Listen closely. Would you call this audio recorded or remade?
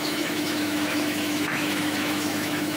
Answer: remade